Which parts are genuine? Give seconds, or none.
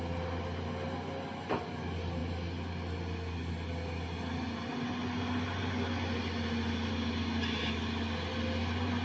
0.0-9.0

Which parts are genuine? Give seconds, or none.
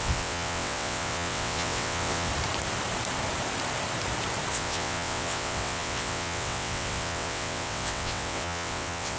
2.3-4.5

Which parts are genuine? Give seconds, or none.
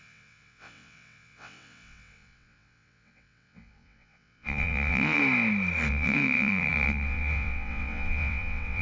5.2-5.9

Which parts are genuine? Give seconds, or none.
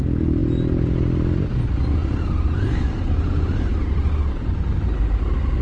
0.0-5.6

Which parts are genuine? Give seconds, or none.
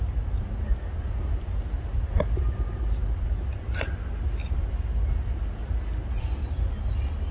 0.0-7.3